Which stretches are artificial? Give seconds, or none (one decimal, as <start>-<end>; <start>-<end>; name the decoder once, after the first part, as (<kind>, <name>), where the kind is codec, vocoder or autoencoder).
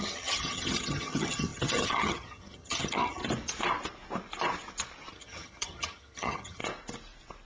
0.0-3.2 (vocoder, HiFi-GAN); 5.1-6.6